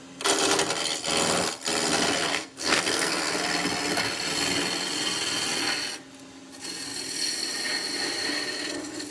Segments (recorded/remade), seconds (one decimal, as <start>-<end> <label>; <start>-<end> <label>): 0.0-2.3 recorded; 2.3-3.4 remade; 3.4-9.1 recorded